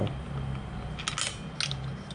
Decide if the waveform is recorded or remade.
recorded